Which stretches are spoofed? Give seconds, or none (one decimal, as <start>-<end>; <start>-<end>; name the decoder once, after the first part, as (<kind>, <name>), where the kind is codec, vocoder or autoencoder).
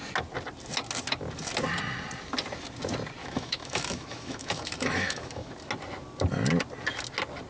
3.2-5.5 (autoencoder, DAC-VAE)